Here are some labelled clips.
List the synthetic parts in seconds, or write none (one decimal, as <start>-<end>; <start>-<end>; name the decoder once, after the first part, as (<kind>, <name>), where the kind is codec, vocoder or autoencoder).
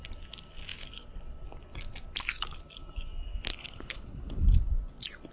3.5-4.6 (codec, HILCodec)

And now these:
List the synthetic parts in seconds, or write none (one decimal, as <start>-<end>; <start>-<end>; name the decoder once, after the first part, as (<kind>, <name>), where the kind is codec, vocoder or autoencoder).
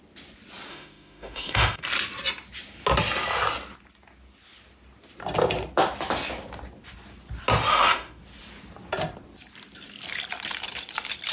0.7-1.8 (autoencoder, DAC-VAE); 7.7-8.2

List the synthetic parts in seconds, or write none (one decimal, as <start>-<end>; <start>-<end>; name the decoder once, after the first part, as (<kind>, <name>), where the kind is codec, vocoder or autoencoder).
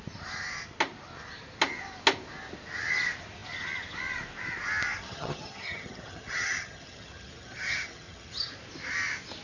5.0-8.5 (vocoder, HiFi-GAN)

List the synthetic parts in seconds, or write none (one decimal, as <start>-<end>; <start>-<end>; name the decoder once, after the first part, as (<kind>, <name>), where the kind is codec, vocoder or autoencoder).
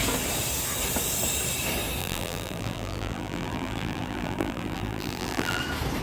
2.0-5.6 (vocoder, BigVGAN v2)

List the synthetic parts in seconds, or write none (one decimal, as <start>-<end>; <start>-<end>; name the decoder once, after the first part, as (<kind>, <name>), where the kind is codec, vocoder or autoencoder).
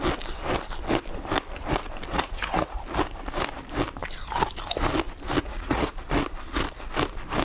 2.1-2.8 (vocoder, Vocos); 5.4-5.9